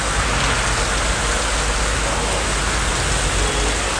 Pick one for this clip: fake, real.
real